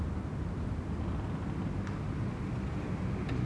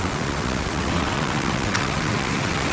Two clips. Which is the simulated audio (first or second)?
second